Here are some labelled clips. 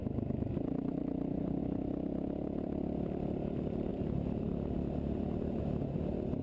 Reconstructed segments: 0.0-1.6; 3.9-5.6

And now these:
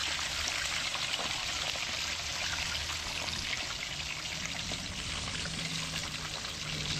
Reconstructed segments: none